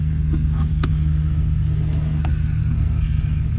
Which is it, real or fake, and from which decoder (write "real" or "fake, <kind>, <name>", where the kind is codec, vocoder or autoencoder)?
fake, codec, SNAC